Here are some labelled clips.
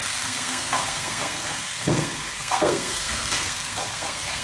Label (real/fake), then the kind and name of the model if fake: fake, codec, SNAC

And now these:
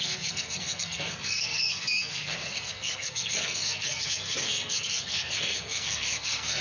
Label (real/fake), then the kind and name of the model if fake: fake, codec, SNAC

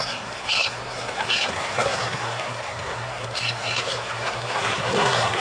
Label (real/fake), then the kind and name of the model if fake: fake, codec, SNAC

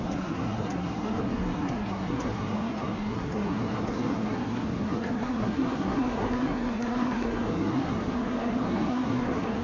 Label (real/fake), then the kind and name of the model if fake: fake, codec, SNAC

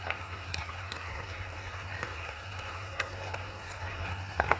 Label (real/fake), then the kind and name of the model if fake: fake, codec, SNAC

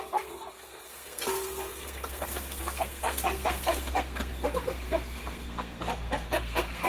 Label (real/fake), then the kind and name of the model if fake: fake, codec, SNAC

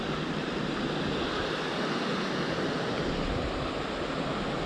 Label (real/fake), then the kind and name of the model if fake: real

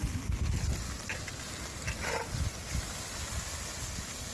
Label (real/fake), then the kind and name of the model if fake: real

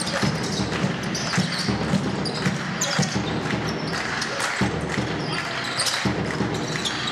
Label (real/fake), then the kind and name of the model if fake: real